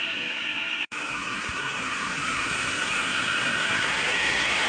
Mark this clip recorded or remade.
remade